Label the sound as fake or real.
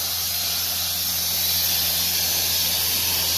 real